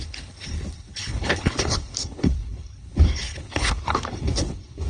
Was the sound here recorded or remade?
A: remade